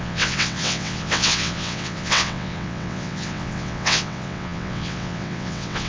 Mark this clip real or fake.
fake